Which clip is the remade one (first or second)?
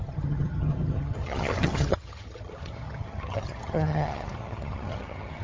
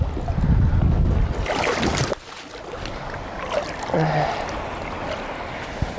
first